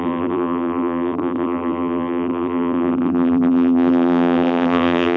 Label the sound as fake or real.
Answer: fake